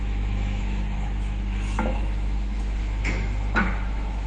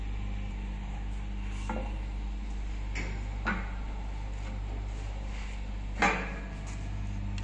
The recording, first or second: second